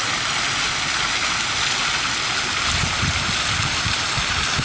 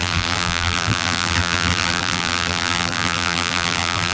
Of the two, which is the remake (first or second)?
second